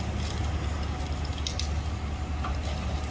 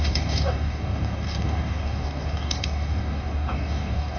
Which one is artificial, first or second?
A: second